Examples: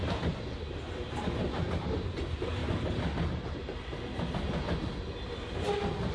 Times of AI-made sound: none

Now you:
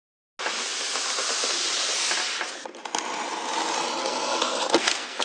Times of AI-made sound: 4.0-5.2 (codec, SNAC)

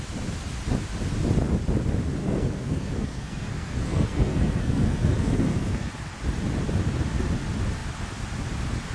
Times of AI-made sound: 2.2-5.9 (codec, SNAC)